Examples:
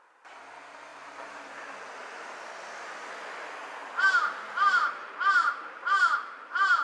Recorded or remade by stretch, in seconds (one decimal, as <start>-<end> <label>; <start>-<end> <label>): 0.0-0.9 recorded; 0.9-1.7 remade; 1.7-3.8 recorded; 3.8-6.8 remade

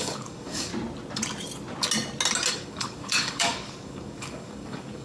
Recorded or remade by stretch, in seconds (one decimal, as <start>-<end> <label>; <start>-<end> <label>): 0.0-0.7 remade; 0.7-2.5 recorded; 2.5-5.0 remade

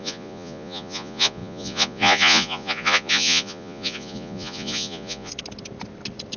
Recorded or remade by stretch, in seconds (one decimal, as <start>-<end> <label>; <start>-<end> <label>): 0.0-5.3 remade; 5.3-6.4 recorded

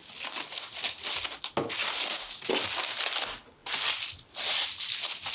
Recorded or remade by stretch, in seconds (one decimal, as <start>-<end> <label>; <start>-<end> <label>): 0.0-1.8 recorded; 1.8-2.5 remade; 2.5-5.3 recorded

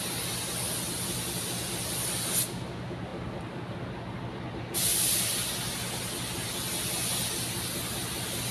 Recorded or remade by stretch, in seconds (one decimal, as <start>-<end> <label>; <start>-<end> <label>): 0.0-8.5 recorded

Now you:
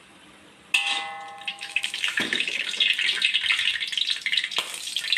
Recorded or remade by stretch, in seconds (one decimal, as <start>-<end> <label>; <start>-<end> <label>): 0.0-1.5 recorded; 1.5-2.7 remade; 2.7-5.2 recorded

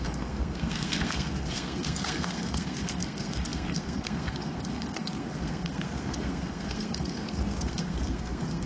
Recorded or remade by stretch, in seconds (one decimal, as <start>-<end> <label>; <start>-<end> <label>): 0.0-8.7 remade

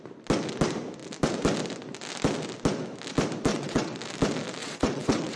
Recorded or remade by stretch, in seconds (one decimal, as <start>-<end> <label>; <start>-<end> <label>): 0.0-3.5 recorded; 3.5-4.0 remade; 4.0-4.6 recorded; 4.6-5.4 remade